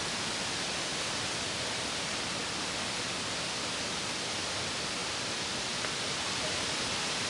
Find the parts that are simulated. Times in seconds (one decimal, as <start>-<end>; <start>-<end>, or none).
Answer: none